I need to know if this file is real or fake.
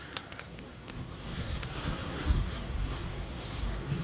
fake